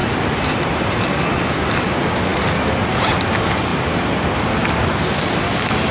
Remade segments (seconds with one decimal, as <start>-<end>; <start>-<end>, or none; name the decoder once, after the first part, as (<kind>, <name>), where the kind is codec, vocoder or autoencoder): 0.0-1.1 (vocoder, BigVGAN v2)